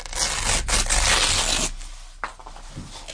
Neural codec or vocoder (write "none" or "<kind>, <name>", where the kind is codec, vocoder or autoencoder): none